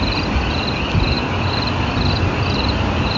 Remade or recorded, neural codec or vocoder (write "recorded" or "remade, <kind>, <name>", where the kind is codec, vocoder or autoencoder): recorded